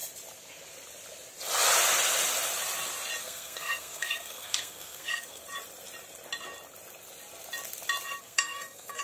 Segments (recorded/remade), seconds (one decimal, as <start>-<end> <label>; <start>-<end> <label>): 0.0-3.2 recorded; 3.2-5.4 remade; 5.4-8.2 recorded; 8.2-9.0 remade